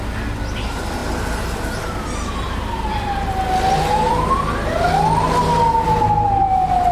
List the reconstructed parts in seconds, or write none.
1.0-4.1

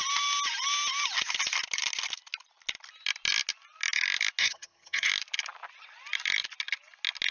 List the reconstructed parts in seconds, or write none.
4.4-5.1